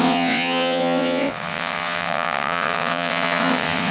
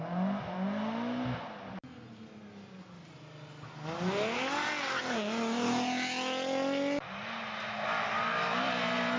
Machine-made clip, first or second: first